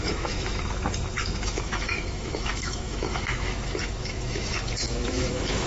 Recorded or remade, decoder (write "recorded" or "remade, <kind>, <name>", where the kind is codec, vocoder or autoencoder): remade, autoencoder, DAC-VAE